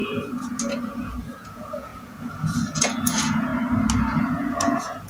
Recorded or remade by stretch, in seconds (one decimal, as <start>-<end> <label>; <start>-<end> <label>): 0.0-3.5 remade; 3.5-4.2 recorded; 4.2-5.1 remade